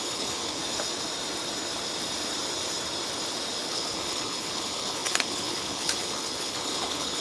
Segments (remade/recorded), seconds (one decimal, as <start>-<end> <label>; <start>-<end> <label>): 0.0-0.6 remade; 0.6-3.7 recorded; 3.7-7.2 remade